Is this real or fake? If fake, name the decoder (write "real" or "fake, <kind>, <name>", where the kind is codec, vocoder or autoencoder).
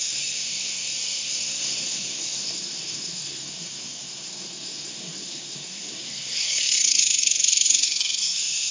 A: fake, codec, SNAC